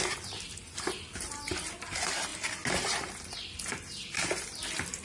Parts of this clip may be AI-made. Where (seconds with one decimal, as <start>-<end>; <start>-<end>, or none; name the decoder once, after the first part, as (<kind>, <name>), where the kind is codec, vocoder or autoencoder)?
none